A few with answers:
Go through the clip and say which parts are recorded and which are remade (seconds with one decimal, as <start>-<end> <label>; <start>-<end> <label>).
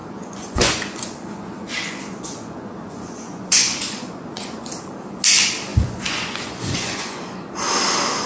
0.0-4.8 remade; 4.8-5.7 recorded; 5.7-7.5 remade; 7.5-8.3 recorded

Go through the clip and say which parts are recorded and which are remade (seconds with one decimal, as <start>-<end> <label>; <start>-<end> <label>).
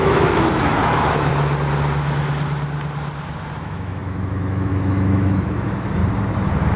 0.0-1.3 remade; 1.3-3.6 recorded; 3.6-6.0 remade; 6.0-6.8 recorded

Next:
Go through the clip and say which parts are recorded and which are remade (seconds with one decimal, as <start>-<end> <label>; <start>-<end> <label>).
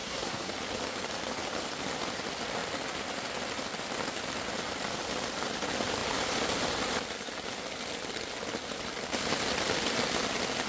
0.0-0.5 remade; 0.5-10.7 recorded